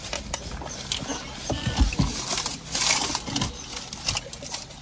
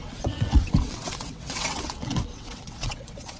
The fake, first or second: second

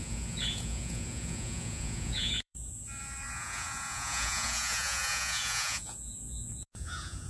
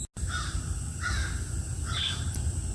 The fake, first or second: first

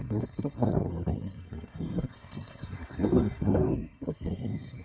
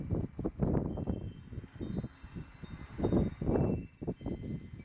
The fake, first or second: first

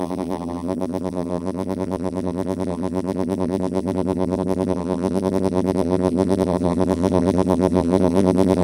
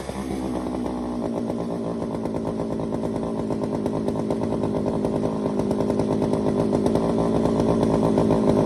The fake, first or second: first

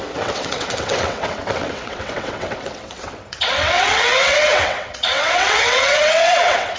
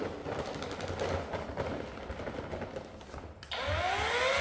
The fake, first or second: first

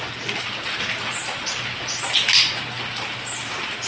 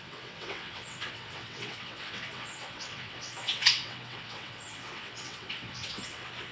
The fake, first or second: second